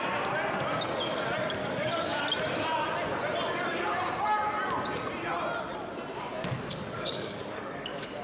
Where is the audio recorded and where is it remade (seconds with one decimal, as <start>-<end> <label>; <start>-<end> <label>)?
0.0-1.6 recorded; 1.6-2.2 remade; 2.2-6.7 recorded; 6.7-8.2 remade